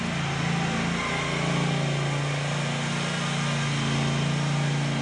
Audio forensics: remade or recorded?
recorded